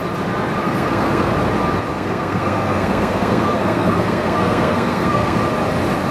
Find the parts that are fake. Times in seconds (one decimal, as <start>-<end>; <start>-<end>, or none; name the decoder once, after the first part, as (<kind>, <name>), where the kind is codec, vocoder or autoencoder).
0.6-1.3 (codec, SNAC); 1.9-5.4